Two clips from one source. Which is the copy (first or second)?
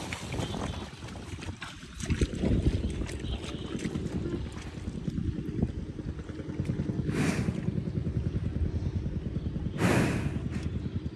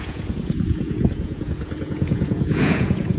second